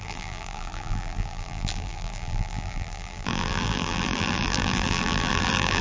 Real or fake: fake